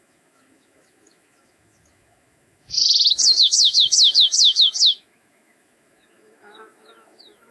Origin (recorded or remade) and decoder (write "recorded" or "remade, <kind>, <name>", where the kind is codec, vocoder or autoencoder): remade, autoencoder, DAC-VAE